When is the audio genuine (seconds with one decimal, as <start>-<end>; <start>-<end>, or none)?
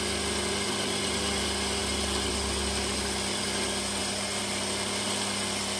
0.0-5.8